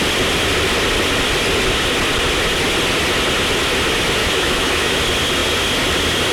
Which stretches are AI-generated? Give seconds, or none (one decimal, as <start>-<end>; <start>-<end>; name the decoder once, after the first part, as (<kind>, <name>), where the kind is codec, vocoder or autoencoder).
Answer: 4.2-5.0 (autoencoder, DAC-VAE)